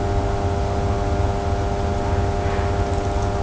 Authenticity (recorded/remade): recorded